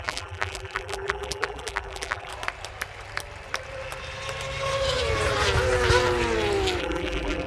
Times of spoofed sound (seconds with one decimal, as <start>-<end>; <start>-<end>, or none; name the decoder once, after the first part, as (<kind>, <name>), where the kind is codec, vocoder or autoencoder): 0.0-2.3 (vocoder, BigVGAN v2); 6.8-7.5